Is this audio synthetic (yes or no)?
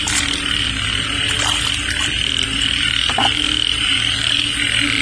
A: yes